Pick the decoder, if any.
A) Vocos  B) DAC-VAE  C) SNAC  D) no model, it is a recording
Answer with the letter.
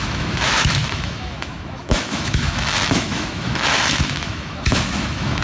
B